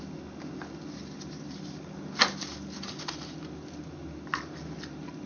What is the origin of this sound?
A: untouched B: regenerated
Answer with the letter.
A